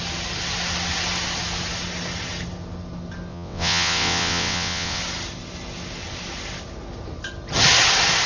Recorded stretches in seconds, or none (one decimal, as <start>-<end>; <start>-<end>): 0.0-3.3; 5.0-8.3